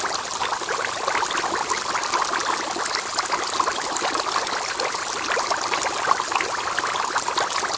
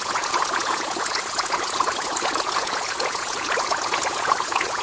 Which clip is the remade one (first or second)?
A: second